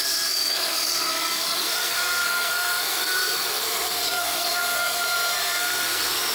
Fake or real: fake